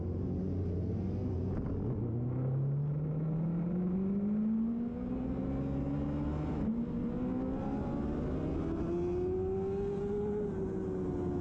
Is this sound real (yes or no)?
yes